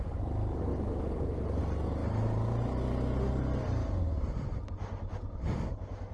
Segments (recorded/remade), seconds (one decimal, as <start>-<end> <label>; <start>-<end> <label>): 0.0-6.1 recorded